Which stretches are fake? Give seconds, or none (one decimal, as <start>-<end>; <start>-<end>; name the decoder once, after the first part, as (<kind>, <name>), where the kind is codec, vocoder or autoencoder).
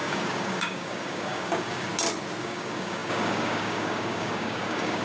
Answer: 0.0-1.9 (codec, DAC); 2.4-5.0